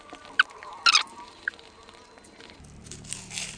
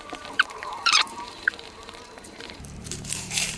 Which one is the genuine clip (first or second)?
first